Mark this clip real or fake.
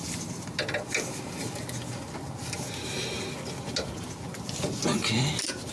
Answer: real